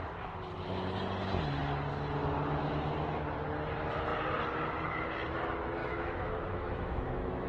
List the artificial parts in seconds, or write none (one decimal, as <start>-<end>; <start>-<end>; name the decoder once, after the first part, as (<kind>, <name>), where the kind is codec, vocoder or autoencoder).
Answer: 5.8-7.5 (autoencoder, DAC-VAE)